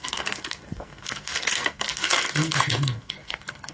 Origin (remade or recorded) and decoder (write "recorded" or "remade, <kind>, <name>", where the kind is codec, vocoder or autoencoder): remade, codec, SNAC